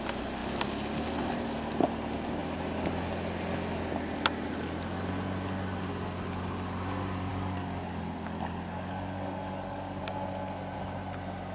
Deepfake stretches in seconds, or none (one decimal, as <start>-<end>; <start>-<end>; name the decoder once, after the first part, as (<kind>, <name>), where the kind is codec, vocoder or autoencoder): 7.3-10.0 (codec, DAC)